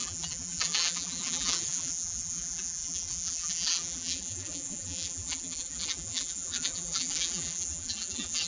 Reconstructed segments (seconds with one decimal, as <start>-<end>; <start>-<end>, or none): 0.0-8.5